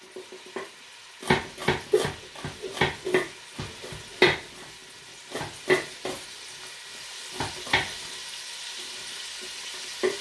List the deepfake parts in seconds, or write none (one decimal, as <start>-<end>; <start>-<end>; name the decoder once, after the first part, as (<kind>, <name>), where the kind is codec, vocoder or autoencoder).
0.0-1.6 (vocoder, BigVGAN v2); 3.8-4.8; 7.5-8.2